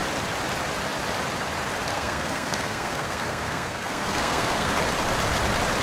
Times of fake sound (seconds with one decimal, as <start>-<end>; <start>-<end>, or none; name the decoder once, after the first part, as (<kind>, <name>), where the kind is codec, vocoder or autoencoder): 1.9-4.7 (codec, SNAC)